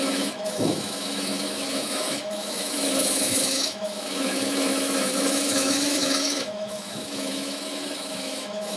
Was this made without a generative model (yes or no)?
no